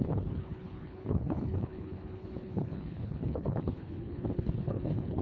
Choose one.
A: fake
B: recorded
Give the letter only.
A